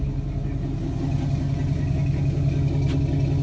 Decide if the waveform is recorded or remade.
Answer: recorded